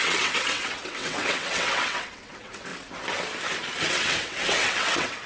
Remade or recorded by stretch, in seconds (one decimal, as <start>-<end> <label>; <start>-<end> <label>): 0.0-2.7 remade; 2.7-3.9 recorded; 3.9-5.3 remade